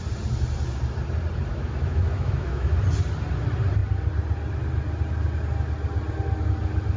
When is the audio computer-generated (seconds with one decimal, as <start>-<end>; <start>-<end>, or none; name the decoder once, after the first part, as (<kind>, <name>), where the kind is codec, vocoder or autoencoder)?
1.5-2.8 (autoencoder, DAC-VAE)

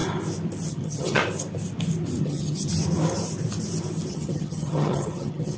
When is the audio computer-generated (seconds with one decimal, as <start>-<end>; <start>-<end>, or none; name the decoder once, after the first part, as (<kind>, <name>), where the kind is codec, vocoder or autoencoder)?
0.7-1.2 (vocoder, HiFi-GAN); 2.2-2.7; 4.1-5.6

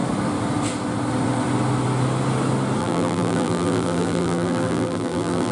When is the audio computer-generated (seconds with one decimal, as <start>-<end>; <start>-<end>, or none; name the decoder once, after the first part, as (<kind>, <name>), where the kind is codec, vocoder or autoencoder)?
2.8-5.5 (vocoder, BigVGAN v2)

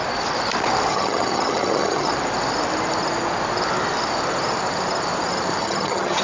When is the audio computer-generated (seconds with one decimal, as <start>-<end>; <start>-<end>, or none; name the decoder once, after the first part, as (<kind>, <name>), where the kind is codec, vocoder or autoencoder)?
0.9-2.1 (vocoder, HiFi-GAN); 5.6-6.2